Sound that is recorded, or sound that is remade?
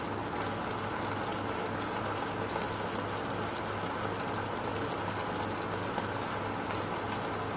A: recorded